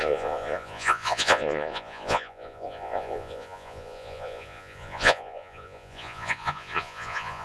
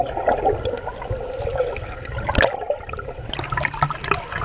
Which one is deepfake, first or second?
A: first